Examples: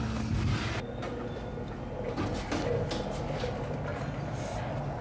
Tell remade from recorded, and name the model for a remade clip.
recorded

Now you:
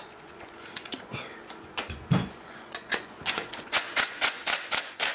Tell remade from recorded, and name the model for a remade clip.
remade, vocoder, Vocos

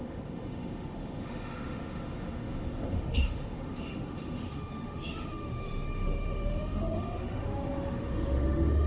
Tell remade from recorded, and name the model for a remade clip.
remade, autoencoder, DAC-VAE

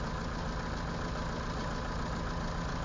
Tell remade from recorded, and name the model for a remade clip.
recorded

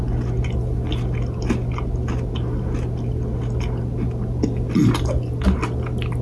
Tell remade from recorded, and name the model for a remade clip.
recorded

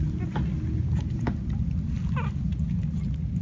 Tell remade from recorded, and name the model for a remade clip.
recorded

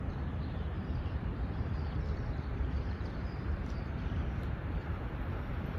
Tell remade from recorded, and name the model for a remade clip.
remade, vocoder, BigVGAN v2